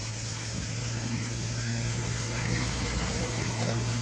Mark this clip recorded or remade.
remade